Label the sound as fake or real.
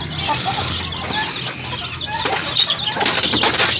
real